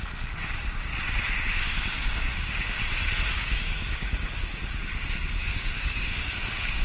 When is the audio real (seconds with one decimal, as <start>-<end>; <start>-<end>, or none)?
0.9-1.4; 2.8-3.3